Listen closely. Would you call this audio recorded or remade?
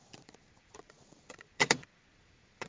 remade